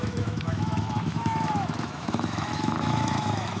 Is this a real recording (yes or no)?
no